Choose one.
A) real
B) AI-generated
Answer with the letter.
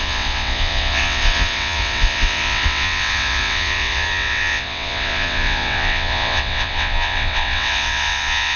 B